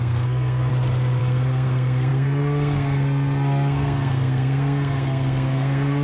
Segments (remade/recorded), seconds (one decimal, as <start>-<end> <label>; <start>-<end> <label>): 0.0-0.7 remade; 0.7-1.2 recorded; 1.2-6.0 remade